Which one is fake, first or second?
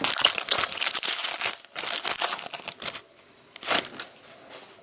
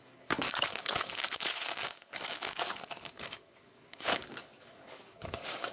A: second